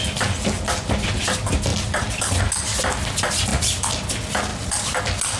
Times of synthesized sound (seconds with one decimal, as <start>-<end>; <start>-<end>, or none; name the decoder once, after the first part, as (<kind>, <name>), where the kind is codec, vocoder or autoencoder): 1.7-2.4 (vocoder, BigVGAN v2); 3.5-4.1; 4.5-5.0